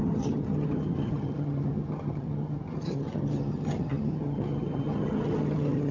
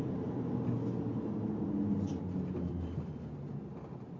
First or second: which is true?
second